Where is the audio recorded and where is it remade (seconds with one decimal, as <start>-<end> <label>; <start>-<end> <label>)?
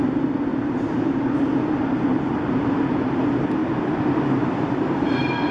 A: 0.0-0.5 recorded; 0.5-1.3 remade; 1.3-2.1 recorded; 2.1-2.8 remade; 2.8-3.6 recorded; 3.6-5.1 remade; 5.1-5.5 recorded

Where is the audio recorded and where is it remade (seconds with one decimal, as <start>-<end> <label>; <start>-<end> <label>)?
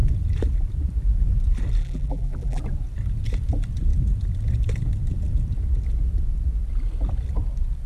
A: 0.0-1.8 recorded; 1.8-2.6 remade; 2.6-7.9 recorded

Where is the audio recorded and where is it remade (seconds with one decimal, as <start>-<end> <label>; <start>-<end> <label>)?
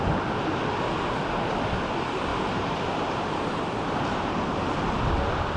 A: 0.0-2.3 recorded; 2.3-4.7 remade; 4.7-5.6 recorded